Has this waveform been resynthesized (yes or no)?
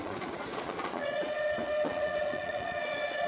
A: yes